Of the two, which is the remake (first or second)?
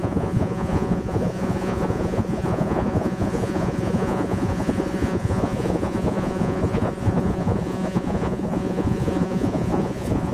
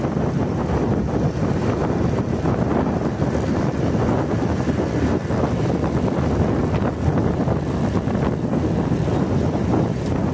first